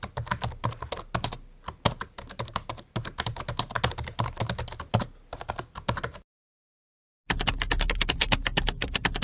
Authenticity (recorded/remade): recorded